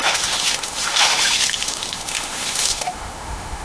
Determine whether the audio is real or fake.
fake